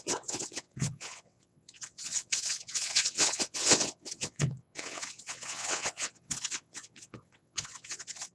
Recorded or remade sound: remade